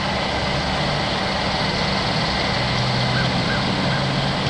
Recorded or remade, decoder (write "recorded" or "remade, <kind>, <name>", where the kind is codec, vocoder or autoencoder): recorded